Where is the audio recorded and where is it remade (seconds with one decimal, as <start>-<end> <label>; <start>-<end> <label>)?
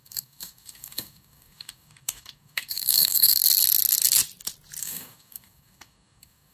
0.0-3.4 remade; 3.4-4.8 recorded; 4.8-6.5 remade